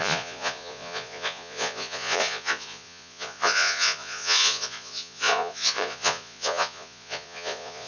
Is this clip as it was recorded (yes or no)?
no